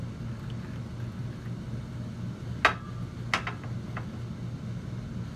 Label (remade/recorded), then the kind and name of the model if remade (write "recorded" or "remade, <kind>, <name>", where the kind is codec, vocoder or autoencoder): recorded